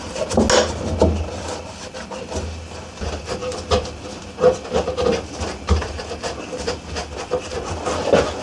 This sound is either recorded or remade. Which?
recorded